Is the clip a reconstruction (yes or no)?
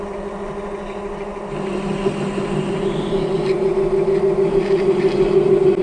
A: no